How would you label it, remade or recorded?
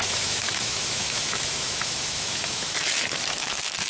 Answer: remade